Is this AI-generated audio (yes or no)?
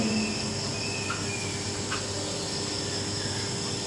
no